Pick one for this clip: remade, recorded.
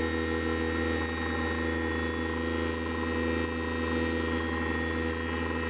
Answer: recorded